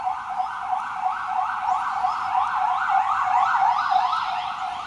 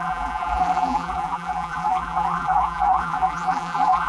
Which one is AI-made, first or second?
second